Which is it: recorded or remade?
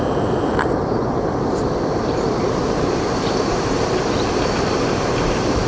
remade